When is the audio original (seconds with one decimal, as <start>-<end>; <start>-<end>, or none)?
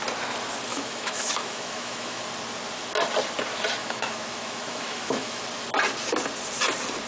0.0-0.7; 2.2-3.8; 5.4-7.1